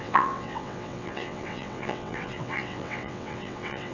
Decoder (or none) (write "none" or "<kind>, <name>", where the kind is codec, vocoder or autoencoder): vocoder, WaveNeXt